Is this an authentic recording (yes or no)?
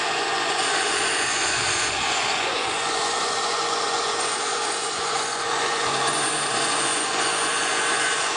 no